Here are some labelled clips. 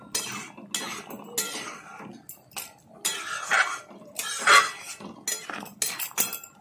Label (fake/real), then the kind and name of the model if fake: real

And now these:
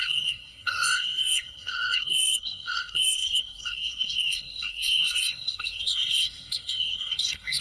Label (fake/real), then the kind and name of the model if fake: fake, codec, SNAC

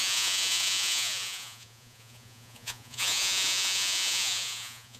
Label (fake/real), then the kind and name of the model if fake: fake, vocoder, Vocos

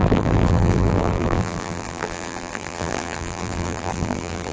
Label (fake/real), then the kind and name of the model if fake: fake, vocoder, BigVGAN v2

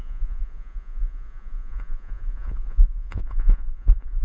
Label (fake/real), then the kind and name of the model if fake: fake, vocoder, Vocos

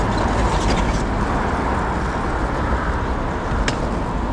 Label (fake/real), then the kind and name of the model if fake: real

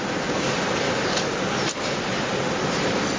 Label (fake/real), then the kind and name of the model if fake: real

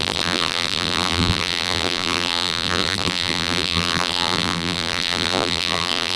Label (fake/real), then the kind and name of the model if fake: fake, vocoder, BigVGAN v2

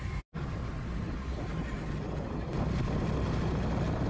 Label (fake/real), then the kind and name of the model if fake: real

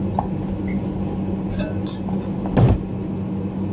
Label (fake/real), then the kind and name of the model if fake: real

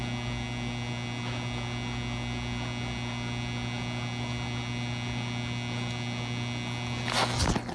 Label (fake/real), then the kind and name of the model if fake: real